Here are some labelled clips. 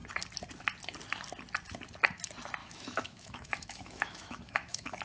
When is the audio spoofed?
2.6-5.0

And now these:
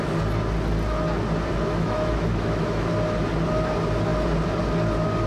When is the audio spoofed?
1.5-2.9